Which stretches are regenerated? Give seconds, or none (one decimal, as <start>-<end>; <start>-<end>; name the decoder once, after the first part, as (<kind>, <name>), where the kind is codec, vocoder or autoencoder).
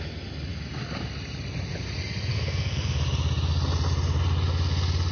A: 2.3-3.0 (codec, SNAC)